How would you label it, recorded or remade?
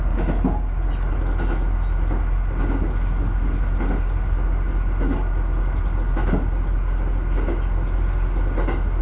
recorded